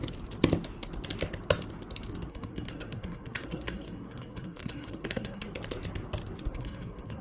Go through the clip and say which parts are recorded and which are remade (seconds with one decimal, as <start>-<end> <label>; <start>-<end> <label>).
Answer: 0.0-2.3 recorded; 2.3-5.5 remade; 5.5-6.4 recorded; 6.4-7.2 remade